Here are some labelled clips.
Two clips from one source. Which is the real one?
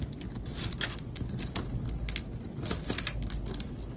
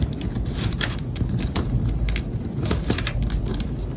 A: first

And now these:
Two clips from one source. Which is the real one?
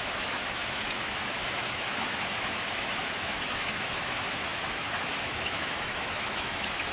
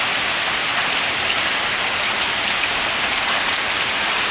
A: second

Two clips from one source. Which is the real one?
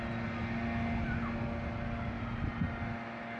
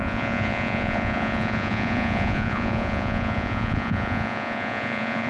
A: first